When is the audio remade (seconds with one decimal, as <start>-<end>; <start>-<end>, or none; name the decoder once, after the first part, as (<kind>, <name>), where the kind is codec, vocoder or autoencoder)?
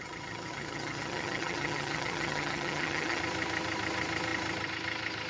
0.0-3.2 (vocoder, HiFi-GAN)